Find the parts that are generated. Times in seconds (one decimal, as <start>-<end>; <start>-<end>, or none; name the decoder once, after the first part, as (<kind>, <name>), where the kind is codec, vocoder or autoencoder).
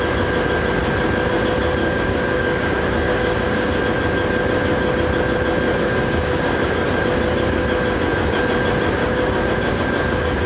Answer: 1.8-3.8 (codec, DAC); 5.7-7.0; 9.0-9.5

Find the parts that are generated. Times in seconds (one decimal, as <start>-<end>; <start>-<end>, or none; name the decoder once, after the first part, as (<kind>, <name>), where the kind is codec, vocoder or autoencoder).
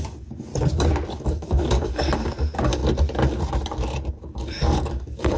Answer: 0.0-0.5 (codec, DAC); 1.1-2.8; 4.1-5.4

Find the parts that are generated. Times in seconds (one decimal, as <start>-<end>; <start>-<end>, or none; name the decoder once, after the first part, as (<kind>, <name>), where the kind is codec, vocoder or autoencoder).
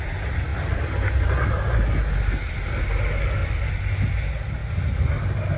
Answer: none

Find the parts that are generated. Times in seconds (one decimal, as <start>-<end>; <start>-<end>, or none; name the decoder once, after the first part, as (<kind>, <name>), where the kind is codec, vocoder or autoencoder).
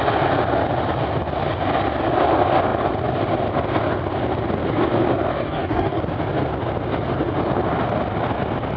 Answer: 5.3-6.0 (codec, DAC)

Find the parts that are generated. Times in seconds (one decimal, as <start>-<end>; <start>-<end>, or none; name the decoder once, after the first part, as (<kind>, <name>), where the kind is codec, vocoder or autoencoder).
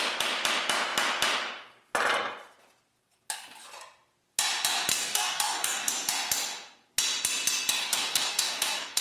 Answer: 4.9-5.9 (codec, DAC); 7.8-9.0